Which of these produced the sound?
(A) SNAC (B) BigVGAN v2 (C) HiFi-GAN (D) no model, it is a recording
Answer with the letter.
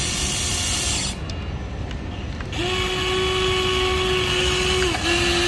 D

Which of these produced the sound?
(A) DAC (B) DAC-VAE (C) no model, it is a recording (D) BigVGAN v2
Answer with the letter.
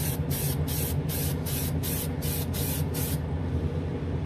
C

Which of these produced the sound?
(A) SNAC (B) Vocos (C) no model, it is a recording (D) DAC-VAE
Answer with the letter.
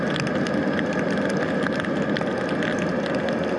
C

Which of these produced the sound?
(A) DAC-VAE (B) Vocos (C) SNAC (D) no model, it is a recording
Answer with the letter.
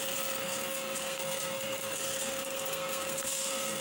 C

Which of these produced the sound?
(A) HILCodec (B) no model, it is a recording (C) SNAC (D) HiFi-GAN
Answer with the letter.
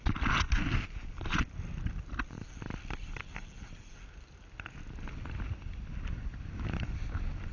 B